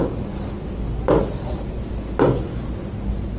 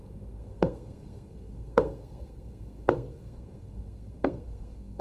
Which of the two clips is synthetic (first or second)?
second